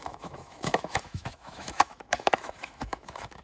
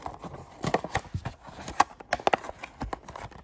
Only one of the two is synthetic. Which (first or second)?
first